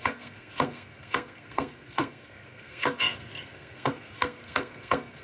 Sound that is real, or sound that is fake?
fake